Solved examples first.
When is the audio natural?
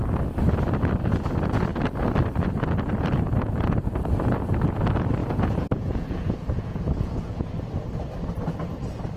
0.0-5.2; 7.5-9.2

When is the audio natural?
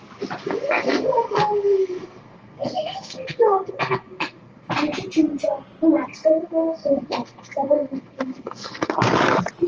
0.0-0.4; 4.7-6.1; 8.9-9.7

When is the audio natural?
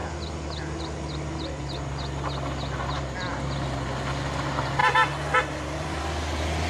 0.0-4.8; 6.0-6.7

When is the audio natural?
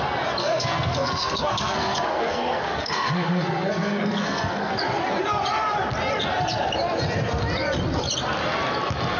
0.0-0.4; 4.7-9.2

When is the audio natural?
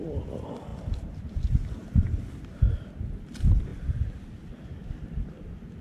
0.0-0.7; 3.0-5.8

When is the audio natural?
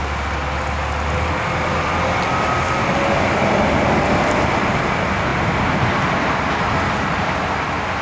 0.0-8.0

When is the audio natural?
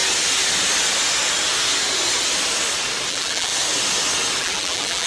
0.0-3.1; 3.5-4.4